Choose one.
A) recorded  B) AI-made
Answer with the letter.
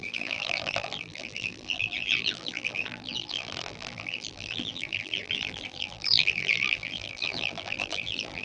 B